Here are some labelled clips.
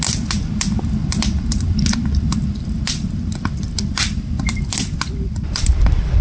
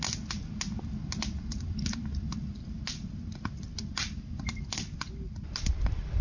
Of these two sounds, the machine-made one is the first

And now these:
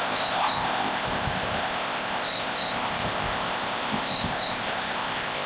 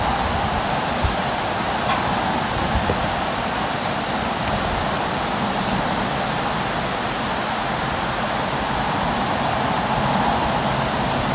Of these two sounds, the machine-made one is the first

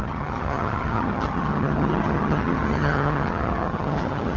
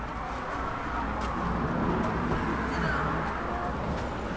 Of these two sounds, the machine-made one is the first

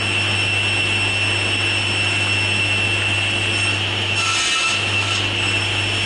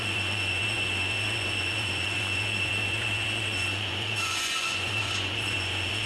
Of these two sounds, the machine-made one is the second